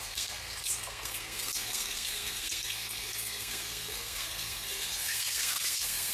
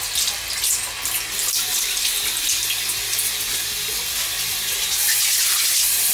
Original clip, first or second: second